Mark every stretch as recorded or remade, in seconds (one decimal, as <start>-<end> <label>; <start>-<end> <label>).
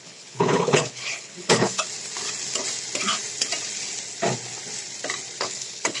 0.0-1.8 remade; 1.8-5.4 recorded; 5.4-6.0 remade